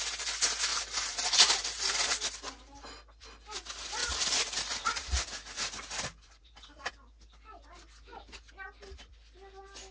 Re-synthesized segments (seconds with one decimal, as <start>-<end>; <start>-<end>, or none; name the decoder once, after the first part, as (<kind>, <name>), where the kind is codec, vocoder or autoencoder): 0.7-1.6 (vocoder, BigVGAN v2); 4.0-6.9

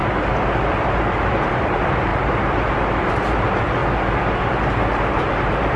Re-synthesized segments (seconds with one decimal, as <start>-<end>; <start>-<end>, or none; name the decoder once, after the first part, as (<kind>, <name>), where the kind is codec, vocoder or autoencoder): 0.7-2.1 (vocoder, BigVGAN v2); 3.1-3.8; 5.0-5.8

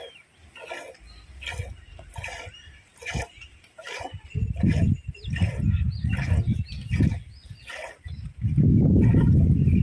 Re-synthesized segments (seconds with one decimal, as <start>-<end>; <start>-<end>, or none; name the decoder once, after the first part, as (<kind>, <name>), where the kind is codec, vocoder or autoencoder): none